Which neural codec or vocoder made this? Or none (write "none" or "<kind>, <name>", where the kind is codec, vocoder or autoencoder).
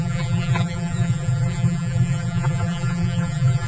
vocoder, BigVGAN v2